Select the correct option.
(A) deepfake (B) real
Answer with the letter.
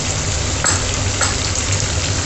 B